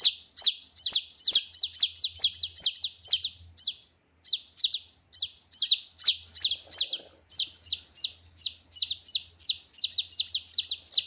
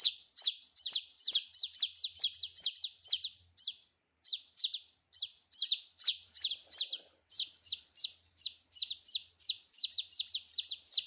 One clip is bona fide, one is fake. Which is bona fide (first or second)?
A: first